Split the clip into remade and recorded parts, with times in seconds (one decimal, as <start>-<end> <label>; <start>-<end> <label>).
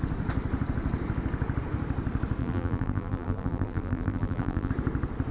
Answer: 0.0-2.4 recorded; 2.4-4.7 remade; 4.7-5.3 recorded